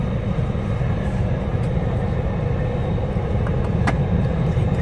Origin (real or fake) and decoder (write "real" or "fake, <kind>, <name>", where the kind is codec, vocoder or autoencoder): fake, vocoder, BigVGAN v2